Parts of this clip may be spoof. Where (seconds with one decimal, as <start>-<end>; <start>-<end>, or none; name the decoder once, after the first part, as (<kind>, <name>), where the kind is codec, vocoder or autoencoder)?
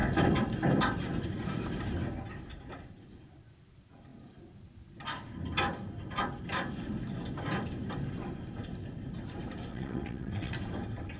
9.7-10.5 (vocoder, WaveNeXt)